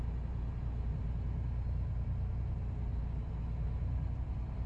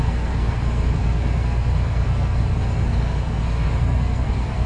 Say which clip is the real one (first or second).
first